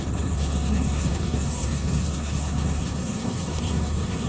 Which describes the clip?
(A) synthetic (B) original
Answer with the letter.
A